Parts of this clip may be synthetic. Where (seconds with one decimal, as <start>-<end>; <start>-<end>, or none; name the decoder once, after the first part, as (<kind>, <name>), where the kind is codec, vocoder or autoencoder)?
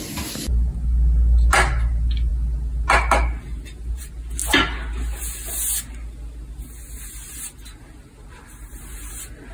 none